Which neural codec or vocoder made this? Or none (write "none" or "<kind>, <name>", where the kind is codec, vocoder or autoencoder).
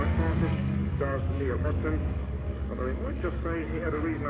codec, DAC